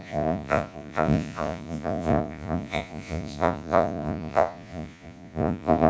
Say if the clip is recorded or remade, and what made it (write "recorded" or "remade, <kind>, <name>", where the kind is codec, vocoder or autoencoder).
remade, vocoder, Vocos